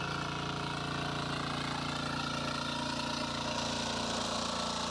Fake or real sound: real